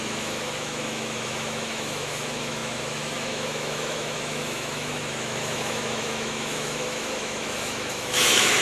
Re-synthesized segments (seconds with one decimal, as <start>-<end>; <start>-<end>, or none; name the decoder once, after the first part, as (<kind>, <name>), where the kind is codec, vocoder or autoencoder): 0.0-8.6 (autoencoder, DAC-VAE)